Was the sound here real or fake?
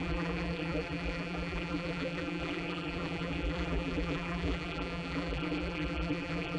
fake